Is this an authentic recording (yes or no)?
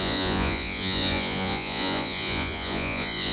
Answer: no